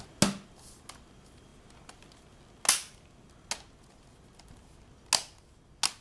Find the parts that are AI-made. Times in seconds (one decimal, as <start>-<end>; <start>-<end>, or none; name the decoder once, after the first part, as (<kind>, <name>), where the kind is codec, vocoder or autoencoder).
none